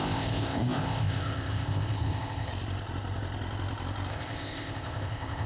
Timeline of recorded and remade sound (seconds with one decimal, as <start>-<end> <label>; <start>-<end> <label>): 0.0-2.5 remade; 2.5-4.1 recorded; 4.1-5.5 remade